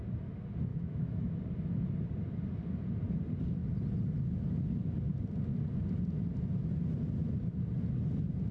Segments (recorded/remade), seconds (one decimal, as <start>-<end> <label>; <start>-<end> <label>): 0.0-0.7 recorded; 0.7-1.3 remade; 1.3-8.5 recorded